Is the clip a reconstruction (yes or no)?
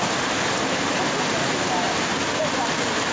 no